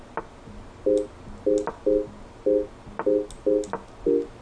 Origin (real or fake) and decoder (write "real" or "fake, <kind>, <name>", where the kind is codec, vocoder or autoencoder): real